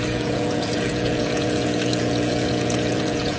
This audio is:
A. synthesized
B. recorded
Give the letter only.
A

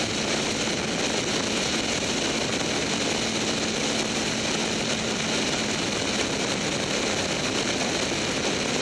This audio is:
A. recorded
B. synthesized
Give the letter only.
A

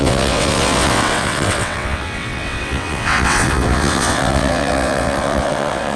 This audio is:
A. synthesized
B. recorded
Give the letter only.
A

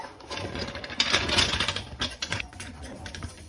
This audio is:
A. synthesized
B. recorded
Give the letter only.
A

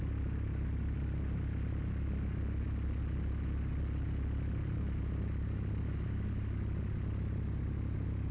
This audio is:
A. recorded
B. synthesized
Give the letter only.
A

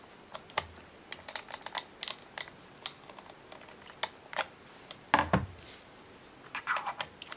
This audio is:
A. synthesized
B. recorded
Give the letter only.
B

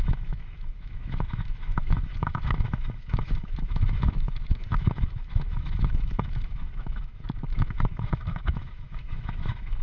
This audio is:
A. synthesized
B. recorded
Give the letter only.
A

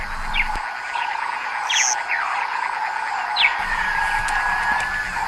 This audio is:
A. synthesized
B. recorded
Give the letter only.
B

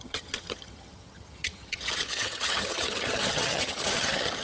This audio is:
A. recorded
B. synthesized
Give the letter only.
B